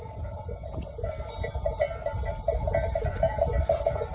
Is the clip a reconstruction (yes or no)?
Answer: no